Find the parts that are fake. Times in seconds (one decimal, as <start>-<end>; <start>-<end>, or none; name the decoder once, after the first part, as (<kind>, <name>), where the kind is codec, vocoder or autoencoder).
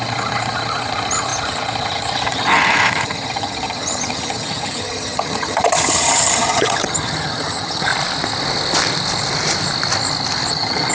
0.0-7.9 (vocoder, HiFi-GAN); 10.5-10.9